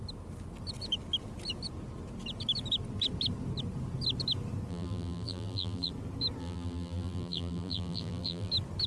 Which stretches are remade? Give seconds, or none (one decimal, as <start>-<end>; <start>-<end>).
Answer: 4.7-5.9; 6.4-8.5